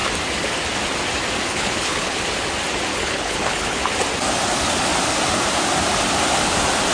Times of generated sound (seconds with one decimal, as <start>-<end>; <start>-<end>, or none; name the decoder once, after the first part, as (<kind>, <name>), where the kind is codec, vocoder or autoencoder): 1.5-2.2 (codec, HILCodec); 2.9-3.8